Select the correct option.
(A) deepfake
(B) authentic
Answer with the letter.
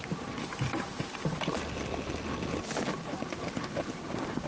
B